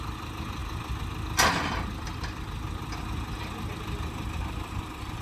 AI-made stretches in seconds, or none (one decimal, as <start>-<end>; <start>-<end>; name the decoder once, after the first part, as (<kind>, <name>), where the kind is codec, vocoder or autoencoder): none